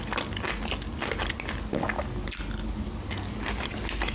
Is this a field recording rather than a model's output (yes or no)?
yes